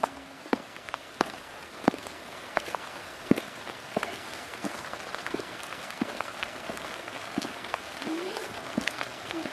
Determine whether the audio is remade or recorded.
remade